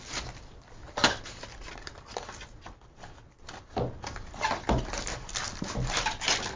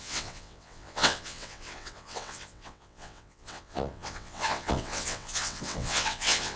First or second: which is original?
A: first